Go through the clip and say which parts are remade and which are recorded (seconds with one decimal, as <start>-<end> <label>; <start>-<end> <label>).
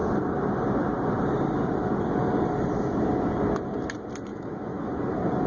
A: 0.0-4.3 recorded; 4.3-4.9 remade; 4.9-5.5 recorded